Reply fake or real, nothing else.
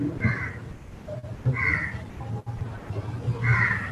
real